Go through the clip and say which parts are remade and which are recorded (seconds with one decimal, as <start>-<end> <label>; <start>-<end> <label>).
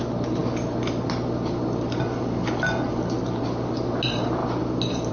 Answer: 0.0-5.1 recorded